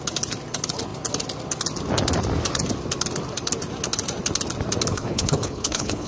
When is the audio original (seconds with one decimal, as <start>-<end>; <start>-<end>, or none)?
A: 0.0-4.9